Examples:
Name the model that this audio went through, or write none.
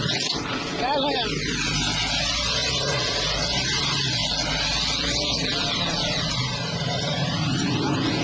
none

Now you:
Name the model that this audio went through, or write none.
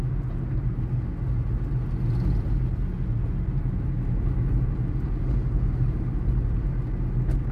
none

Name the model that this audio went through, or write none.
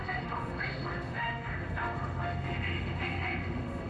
autoencoder, DAC-VAE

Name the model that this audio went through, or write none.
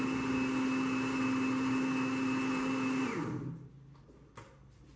none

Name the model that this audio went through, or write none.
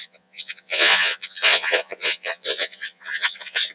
vocoder, Vocos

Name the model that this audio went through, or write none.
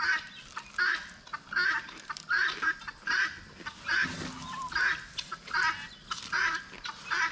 none